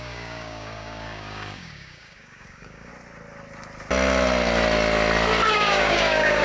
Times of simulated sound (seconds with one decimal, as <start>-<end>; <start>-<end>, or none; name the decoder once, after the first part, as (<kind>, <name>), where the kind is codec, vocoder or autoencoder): 0.0-2.9 (codec, DAC); 5.5-6.4